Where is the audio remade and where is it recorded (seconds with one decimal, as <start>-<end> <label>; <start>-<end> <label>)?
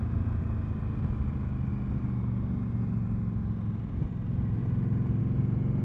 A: 0.0-5.8 recorded